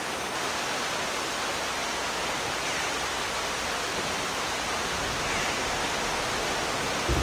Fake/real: real